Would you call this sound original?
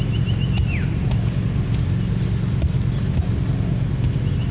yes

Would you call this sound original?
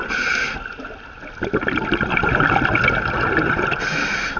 yes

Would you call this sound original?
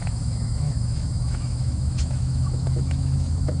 no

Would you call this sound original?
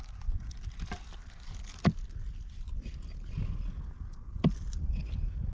yes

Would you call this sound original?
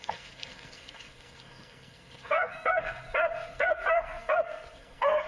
no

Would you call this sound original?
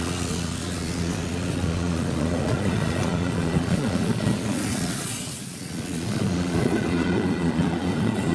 no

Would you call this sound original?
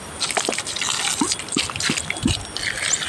yes